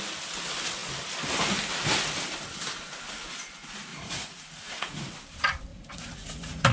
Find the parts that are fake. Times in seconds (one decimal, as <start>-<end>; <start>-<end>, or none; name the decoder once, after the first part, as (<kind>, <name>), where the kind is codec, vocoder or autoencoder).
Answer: 3.9-5.1 (vocoder, Vocos); 5.7-6.7